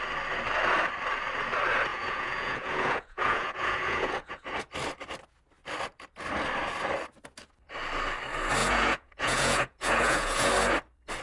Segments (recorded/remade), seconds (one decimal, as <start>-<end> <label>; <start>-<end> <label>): 0.0-1.9 recorded; 1.9-4.6 remade; 4.6-8.6 recorded; 8.6-10.5 remade; 10.5-11.2 recorded